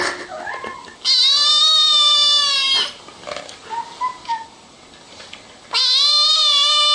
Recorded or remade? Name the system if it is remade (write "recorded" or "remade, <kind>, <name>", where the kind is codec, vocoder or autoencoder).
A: recorded